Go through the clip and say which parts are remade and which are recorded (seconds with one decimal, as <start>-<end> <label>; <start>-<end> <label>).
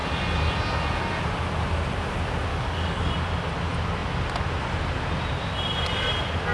0.0-2.5 recorded; 2.5-3.1 remade; 3.1-6.5 recorded